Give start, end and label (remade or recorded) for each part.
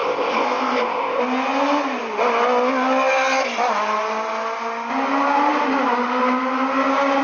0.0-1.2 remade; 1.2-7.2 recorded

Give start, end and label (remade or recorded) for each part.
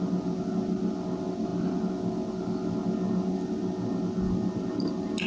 0.0-5.3 recorded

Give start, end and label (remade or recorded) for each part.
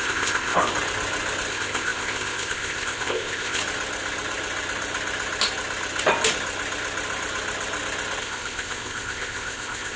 0.0-0.7 remade; 0.7-1.5 recorded; 1.5-3.6 remade; 3.6-8.2 recorded; 8.2-10.0 remade